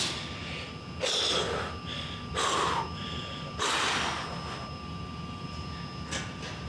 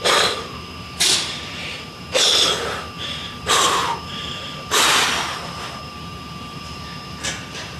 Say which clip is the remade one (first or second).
second